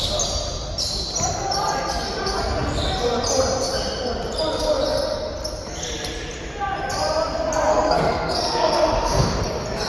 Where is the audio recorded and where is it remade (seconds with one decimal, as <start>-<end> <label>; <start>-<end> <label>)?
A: 0.0-7.7 recorded; 7.7-9.4 remade; 9.4-9.9 recorded